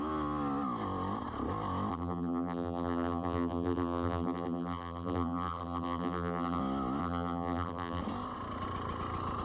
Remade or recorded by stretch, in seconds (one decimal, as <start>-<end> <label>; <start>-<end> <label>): 0.0-1.9 recorded; 1.9-6.6 remade; 6.6-7.0 recorded; 7.0-8.0 remade; 8.0-9.4 recorded